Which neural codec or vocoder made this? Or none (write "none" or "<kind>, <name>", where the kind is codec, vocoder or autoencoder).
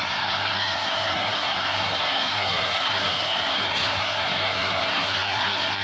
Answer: codec, SNAC